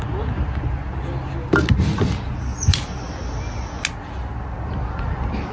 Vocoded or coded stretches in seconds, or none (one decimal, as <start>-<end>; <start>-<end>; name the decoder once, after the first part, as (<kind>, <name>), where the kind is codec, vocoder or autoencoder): none